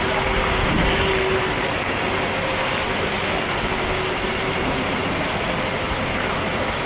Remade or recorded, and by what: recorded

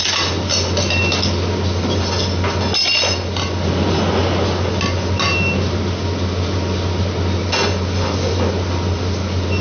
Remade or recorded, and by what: recorded